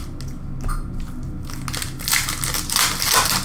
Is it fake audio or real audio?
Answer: real